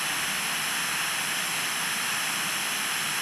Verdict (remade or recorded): recorded